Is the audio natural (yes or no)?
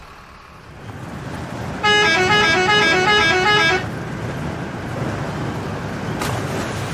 yes